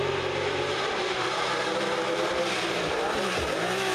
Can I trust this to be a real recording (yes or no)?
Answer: no